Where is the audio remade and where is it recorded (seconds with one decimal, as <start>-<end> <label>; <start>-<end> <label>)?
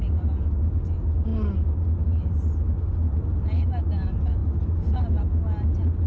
0.0-6.1 recorded